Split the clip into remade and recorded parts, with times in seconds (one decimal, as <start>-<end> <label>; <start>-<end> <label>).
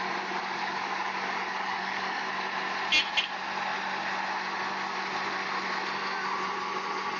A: 0.0-0.4 recorded; 0.4-2.3 remade; 2.3-7.2 recorded